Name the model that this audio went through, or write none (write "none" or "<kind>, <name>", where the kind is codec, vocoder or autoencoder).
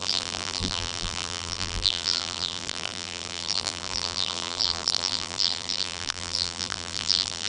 vocoder, BigVGAN v2